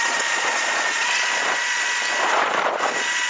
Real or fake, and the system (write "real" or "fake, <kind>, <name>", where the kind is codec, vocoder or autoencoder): fake, vocoder, Vocos